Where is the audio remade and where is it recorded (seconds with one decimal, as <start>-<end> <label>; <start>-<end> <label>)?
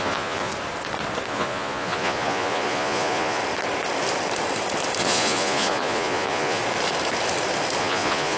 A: 0.0-0.5 remade; 0.5-1.3 recorded; 1.3-3.4 remade; 3.4-5.0 recorded; 5.0-6.6 remade; 6.6-7.8 recorded; 7.8-8.4 remade